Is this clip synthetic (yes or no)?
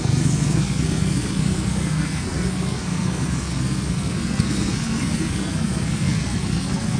yes